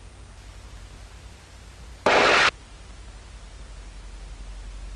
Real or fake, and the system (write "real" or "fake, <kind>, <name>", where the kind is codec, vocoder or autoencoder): real